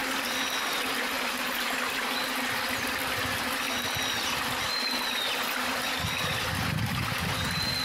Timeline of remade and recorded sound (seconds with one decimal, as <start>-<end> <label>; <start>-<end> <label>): 0.0-7.8 recorded